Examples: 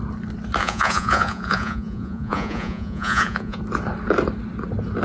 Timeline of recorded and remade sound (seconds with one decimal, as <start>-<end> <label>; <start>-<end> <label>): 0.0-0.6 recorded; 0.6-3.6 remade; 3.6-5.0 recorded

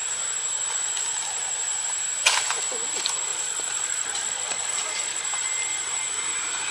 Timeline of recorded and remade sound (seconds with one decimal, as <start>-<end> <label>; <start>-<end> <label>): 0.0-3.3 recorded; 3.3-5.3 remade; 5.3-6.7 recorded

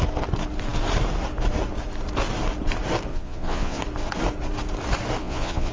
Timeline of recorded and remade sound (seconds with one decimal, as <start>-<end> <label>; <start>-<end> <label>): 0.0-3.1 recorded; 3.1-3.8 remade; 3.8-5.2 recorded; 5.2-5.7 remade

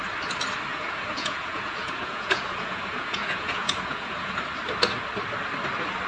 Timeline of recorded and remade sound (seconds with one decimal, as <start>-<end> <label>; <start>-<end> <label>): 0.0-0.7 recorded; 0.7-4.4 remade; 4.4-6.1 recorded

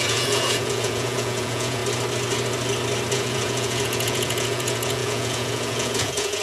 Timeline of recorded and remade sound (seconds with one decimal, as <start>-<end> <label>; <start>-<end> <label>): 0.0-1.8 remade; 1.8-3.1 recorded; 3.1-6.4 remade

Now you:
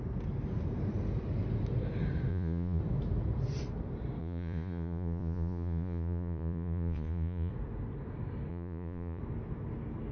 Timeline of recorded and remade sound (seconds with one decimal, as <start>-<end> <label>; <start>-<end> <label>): 0.0-2.3 recorded; 2.3-2.8 remade; 2.8-4.2 recorded; 4.2-7.5 remade; 7.5-8.5 recorded; 8.5-9.2 remade; 9.2-10.1 recorded

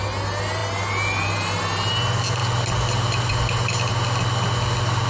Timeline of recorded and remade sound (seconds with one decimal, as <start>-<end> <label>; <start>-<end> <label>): 0.0-5.1 recorded